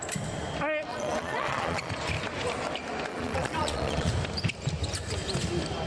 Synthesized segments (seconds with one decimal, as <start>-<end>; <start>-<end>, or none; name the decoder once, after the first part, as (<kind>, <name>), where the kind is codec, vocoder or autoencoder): 0.9-1.9 (vocoder, Vocos); 3.1-4.1